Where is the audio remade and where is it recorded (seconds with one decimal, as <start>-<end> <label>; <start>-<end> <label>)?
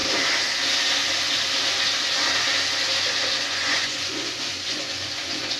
0.0-3.4 recorded; 3.4-5.6 remade